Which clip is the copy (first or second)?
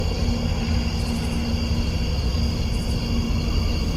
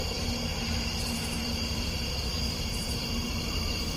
second